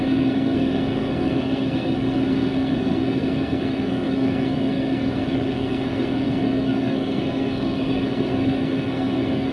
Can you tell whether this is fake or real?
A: fake